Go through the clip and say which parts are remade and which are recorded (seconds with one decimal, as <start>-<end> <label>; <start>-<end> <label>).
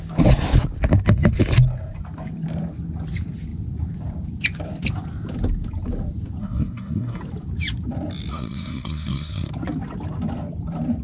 0.0-6.4 recorded; 6.4-7.2 remade; 7.2-8.3 recorded; 8.3-9.5 remade; 9.5-11.0 recorded